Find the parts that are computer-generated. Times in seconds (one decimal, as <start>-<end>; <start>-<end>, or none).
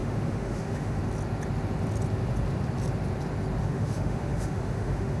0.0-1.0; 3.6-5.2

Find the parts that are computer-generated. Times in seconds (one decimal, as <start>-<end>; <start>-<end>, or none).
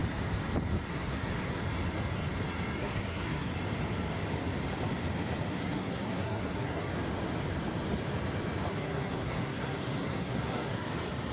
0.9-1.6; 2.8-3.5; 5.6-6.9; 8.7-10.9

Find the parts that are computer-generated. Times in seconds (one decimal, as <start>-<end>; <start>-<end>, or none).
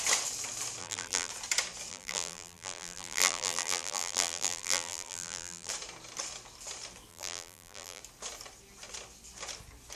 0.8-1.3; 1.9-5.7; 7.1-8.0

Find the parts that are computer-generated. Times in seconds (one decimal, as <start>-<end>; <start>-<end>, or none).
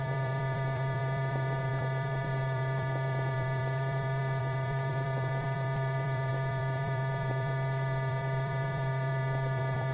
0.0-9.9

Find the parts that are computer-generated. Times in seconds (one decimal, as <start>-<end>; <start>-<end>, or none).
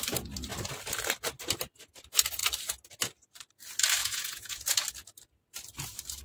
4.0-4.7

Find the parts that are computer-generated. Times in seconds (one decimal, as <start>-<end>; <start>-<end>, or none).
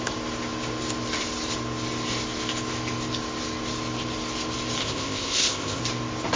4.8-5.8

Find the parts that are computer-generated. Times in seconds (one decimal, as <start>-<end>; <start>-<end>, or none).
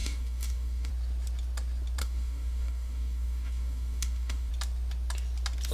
0.0-0.9; 2.0-4.5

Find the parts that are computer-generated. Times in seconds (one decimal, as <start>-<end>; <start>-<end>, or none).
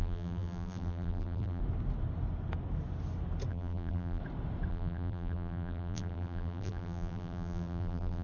0.0-1.6; 3.5-4.2; 4.7-8.2